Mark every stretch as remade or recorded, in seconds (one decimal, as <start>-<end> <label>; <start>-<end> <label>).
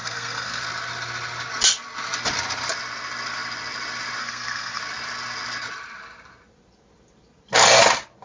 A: 0.0-0.6 remade; 0.6-4.2 recorded; 4.2-4.8 remade; 4.8-8.2 recorded